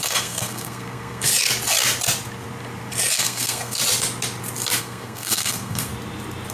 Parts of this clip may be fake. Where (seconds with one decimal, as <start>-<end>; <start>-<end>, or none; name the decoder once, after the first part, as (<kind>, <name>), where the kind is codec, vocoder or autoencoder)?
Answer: 0.0-1.3 (codec, SNAC); 3.1-3.8; 4.8-5.9